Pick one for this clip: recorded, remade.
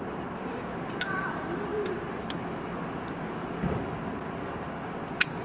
recorded